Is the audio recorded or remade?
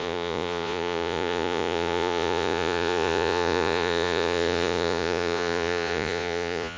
remade